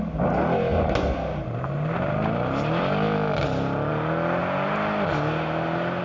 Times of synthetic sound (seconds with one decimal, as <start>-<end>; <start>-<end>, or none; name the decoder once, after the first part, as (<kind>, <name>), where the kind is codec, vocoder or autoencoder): none